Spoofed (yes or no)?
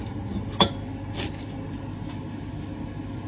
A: no